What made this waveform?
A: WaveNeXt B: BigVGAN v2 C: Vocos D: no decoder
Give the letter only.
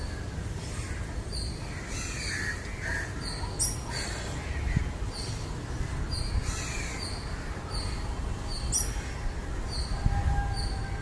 D